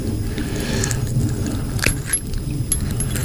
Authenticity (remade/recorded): recorded